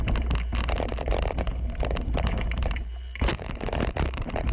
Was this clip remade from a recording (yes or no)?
yes